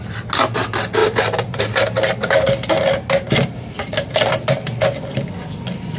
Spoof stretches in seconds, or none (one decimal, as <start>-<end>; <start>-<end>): none